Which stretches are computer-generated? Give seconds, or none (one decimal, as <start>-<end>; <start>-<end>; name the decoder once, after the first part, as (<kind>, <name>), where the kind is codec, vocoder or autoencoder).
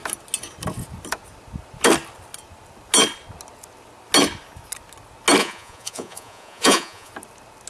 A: 5.4-7.1 (vocoder, Vocos)